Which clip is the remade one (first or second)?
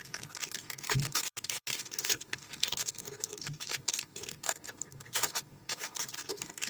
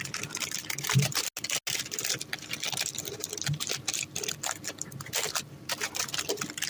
first